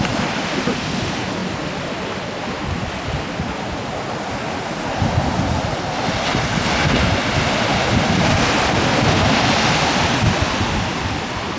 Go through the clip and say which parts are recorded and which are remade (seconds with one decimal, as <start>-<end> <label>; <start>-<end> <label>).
0.0-11.6 recorded